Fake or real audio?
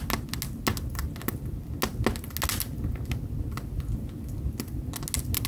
real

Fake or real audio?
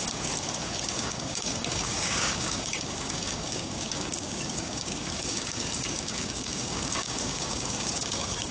fake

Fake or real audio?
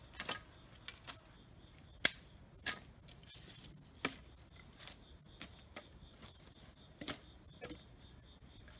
real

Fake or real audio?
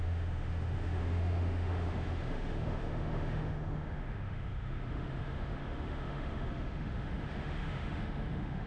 fake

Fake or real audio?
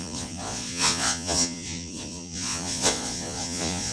fake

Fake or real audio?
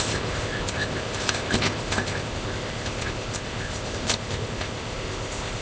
fake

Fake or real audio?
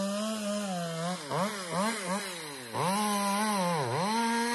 real